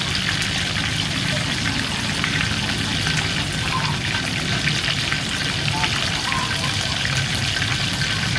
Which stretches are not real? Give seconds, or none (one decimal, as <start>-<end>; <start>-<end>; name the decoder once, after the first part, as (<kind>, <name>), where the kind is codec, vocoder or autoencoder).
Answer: none